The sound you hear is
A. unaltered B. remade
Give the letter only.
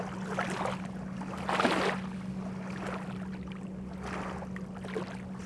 A